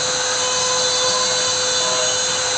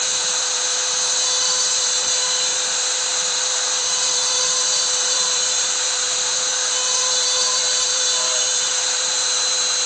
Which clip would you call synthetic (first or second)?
second